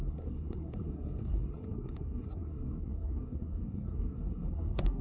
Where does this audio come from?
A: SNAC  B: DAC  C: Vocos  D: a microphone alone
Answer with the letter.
A